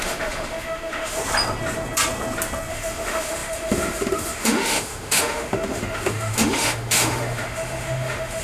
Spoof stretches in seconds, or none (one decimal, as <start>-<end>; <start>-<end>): 0.0-1.2; 2.7-8.4